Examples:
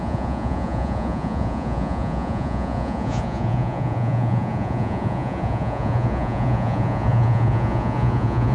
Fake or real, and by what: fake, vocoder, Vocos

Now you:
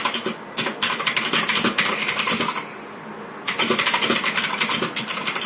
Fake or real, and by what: real